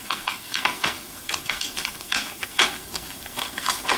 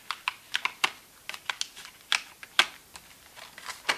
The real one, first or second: second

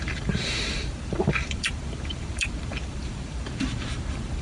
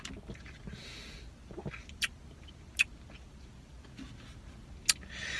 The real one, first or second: second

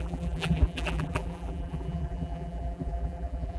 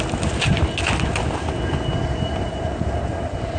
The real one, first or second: second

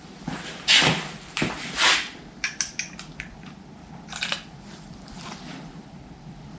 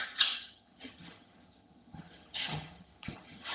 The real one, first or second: first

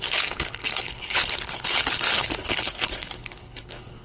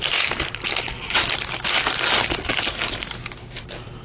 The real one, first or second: second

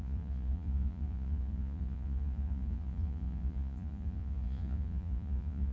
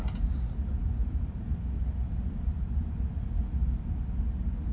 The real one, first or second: second